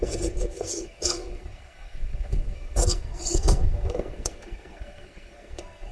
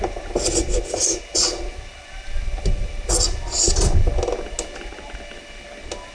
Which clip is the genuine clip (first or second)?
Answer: second